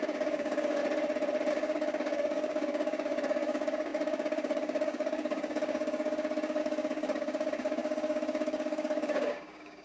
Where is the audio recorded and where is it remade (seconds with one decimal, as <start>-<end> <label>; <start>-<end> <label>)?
0.0-0.8 remade; 0.8-1.5 recorded; 1.5-9.8 remade